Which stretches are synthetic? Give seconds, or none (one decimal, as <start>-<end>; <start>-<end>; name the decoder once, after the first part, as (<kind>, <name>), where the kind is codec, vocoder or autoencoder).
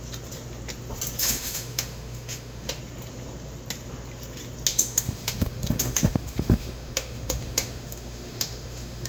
1.2-2.8 (autoencoder, DAC-VAE); 4.7-9.1